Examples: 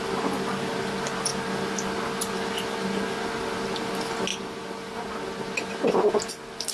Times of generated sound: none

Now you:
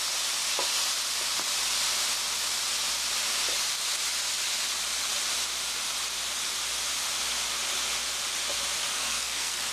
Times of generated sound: 8.9-9.7 (codec, SNAC)